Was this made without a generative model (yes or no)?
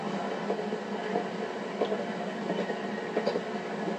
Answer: yes